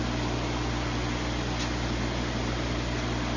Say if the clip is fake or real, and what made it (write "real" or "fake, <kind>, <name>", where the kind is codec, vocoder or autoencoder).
real